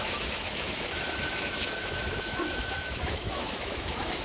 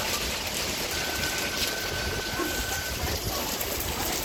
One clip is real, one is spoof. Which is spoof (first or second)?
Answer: first